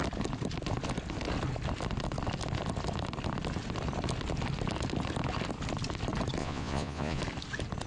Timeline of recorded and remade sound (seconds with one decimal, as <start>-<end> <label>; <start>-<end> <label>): 0.0-6.4 recorded; 6.4-7.2 remade; 7.2-7.9 recorded